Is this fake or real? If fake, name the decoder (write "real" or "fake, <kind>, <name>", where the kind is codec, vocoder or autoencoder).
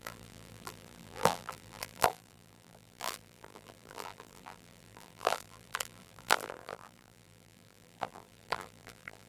fake, vocoder, BigVGAN v2